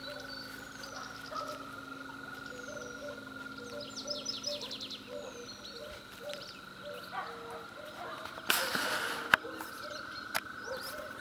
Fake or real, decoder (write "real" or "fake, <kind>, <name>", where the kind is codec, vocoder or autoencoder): real